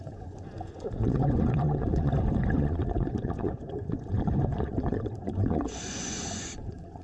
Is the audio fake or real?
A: fake